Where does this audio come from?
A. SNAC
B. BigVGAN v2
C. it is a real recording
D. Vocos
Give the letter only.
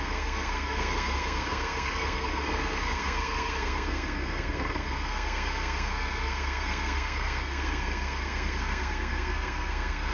A